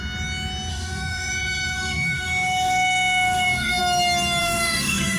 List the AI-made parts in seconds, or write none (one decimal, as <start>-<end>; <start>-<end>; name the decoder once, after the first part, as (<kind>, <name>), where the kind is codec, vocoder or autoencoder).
0.7-3.8 (autoencoder, DAC-VAE); 4.4-5.2